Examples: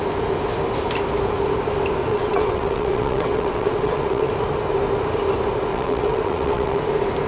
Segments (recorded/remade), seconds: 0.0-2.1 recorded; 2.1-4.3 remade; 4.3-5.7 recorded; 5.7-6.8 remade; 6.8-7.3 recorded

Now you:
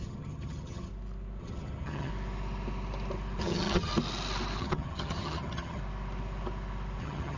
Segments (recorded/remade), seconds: 0.0-0.9 remade; 0.9-1.4 recorded; 1.4-2.1 remade; 2.1-3.4 recorded; 3.4-3.9 remade; 3.9-4.6 recorded; 4.6-5.8 remade; 5.8-7.0 recorded; 7.0-7.4 remade

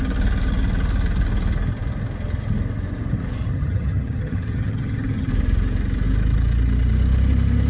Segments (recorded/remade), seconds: 0.0-3.4 recorded; 3.4-5.3 remade; 5.3-7.7 recorded

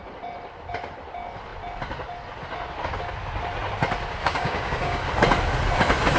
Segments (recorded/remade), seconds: 0.0-4.2 recorded; 4.2-5.0 remade; 5.0-6.2 recorded

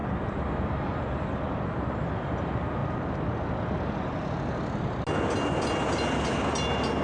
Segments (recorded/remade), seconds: 0.0-7.0 recorded

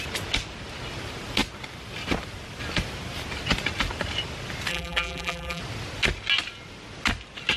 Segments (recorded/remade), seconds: 0.0-4.7 recorded; 4.7-5.6 remade; 5.6-7.6 recorded

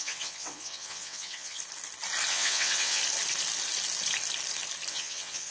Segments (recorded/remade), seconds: 0.0-1.6 remade; 1.6-2.3 recorded; 2.3-3.0 remade; 3.0-4.9 recorded; 4.9-5.5 remade